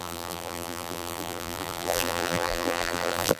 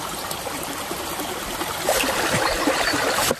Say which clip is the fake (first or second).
first